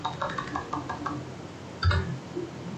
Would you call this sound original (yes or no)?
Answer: yes